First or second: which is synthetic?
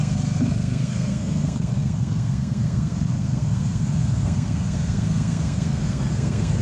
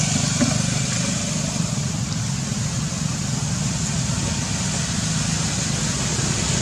first